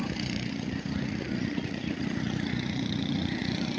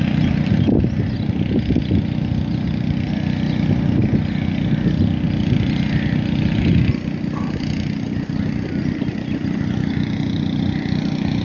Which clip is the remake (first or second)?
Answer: first